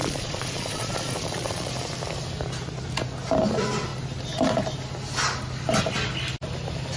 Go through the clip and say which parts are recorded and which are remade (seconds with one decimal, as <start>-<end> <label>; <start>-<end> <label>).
0.0-1.7 remade; 1.7-7.0 recorded

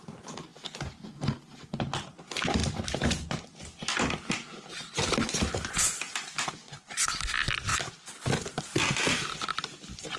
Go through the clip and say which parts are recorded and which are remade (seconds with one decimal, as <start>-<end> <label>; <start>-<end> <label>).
0.0-10.2 recorded

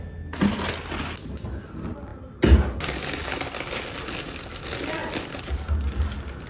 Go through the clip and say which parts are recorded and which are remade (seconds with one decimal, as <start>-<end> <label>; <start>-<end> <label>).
0.0-5.0 recorded; 5.0-5.7 remade; 5.7-6.5 recorded

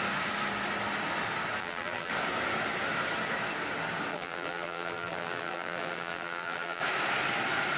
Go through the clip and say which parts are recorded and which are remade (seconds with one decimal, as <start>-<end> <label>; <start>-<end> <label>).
0.0-1.6 recorded; 1.6-2.1 remade; 2.1-4.1 recorded; 4.1-6.8 remade; 6.8-7.8 recorded

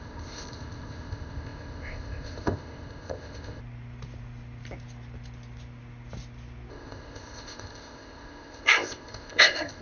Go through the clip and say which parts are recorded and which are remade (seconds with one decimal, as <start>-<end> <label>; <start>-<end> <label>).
0.0-3.6 remade; 3.6-6.7 recorded; 6.7-9.8 remade

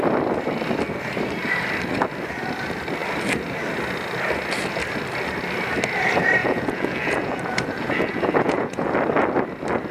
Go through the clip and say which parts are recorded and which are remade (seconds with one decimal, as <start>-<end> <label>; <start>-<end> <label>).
0.0-6.4 recorded; 6.4-8.9 remade; 8.9-9.9 recorded